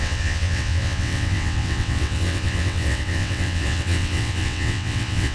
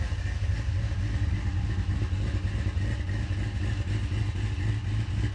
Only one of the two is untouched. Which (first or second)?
second